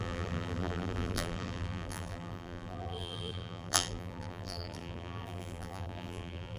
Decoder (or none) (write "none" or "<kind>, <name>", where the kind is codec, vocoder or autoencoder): vocoder, BigVGAN v2